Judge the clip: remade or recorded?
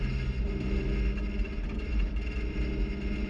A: recorded